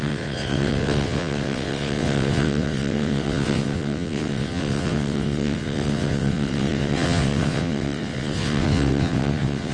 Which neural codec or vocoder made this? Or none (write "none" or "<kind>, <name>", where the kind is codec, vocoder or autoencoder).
vocoder, WaveNeXt